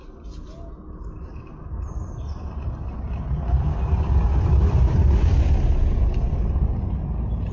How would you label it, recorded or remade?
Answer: recorded